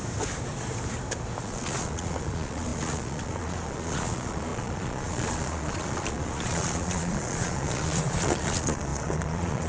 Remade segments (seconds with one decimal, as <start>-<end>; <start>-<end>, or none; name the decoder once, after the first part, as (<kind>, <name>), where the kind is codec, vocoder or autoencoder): 1.4-9.7 (vocoder, Vocos)